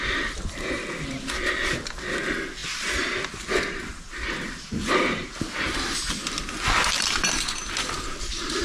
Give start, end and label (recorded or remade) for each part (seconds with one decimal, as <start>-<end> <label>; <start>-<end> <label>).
0.0-8.6 recorded